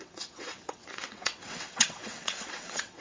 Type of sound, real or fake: fake